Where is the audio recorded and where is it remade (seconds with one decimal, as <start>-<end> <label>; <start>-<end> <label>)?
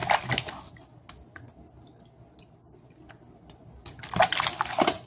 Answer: 0.0-5.1 recorded